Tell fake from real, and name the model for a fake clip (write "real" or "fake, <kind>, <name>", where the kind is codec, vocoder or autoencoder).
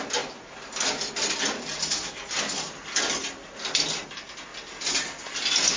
real